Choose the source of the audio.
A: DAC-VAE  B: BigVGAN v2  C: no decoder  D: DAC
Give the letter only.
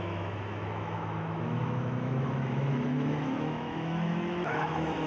A